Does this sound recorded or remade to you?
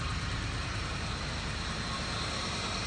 remade